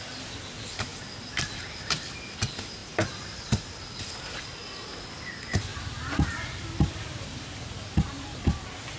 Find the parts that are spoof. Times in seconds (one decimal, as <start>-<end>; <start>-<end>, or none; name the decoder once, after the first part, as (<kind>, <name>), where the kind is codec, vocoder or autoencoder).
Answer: 5.7-7.5 (vocoder, BigVGAN v2)